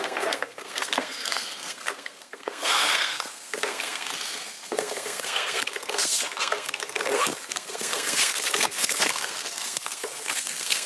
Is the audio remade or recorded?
remade